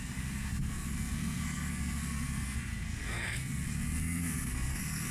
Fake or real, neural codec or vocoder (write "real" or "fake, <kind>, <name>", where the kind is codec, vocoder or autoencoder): fake, codec, SNAC